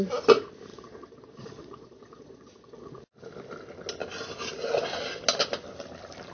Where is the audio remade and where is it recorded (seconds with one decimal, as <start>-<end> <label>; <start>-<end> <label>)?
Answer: 0.0-0.7 recorded; 0.7-2.9 remade; 2.9-6.3 recorded